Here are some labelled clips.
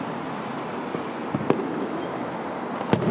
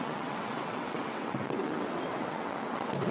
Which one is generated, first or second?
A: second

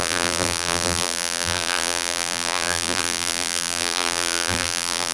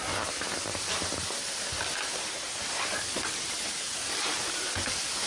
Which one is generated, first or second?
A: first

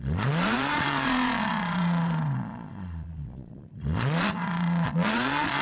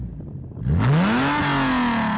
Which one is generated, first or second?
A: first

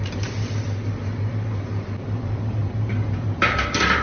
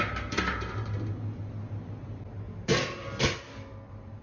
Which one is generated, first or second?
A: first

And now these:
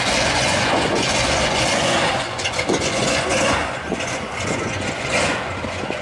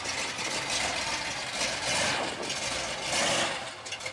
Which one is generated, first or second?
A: first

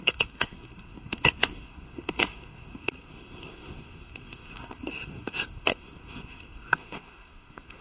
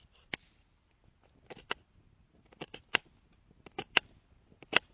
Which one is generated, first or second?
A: first